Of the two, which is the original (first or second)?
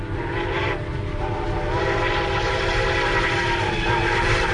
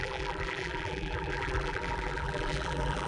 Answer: first